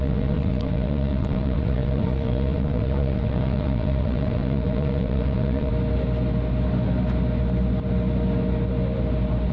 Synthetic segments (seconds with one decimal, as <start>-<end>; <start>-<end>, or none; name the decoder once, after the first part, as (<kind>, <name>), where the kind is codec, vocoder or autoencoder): 0.0-5.7 (vocoder, WaveNeXt)